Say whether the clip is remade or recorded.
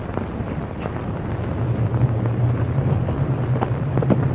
recorded